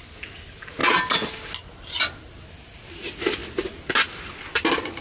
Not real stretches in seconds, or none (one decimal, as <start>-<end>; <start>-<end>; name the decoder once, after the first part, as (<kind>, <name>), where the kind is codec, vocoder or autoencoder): none